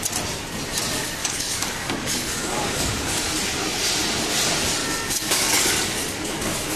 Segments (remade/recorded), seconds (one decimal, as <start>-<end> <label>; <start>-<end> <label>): 0.0-1.2 recorded; 1.2-3.3 remade; 3.3-4.8 recorded; 4.8-6.8 remade